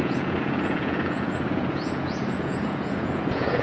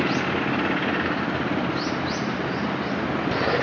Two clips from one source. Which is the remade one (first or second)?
first